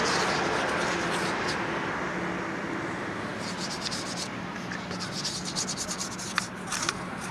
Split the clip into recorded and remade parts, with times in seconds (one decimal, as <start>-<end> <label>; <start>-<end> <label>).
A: 0.0-7.3 recorded